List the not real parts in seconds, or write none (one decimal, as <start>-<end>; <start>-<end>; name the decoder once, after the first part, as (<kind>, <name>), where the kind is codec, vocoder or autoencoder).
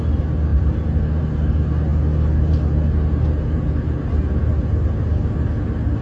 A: none